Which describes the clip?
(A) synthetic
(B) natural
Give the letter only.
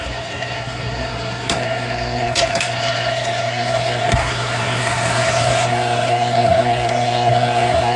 A